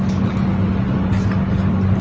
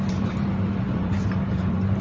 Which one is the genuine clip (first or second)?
first